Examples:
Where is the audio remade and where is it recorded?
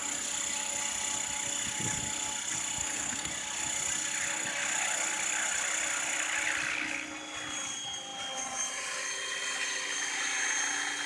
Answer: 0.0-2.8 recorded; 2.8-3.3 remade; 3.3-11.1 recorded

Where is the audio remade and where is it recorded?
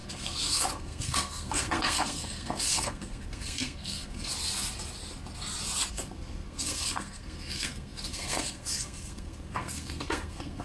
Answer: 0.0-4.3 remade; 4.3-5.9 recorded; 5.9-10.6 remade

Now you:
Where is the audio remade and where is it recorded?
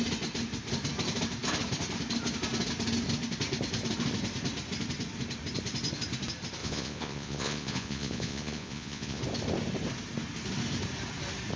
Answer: 0.0-6.6 recorded; 6.6-9.2 remade; 9.2-11.6 recorded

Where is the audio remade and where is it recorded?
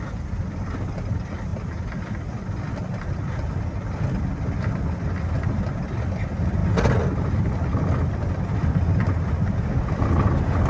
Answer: 0.0-10.7 recorded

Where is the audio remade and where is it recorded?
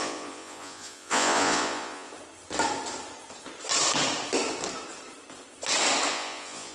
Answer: 0.0-2.1 remade; 2.1-6.1 recorded; 6.1-6.7 remade